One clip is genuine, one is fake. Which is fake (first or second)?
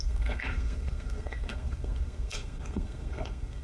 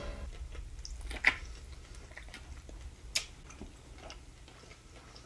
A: first